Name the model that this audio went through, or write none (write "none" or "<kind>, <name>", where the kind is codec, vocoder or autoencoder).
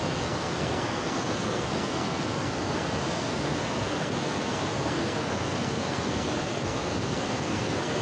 codec, SNAC